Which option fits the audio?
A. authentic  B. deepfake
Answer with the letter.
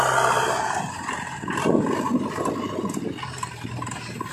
A